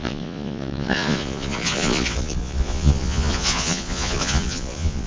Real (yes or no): no